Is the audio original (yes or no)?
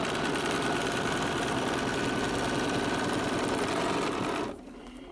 yes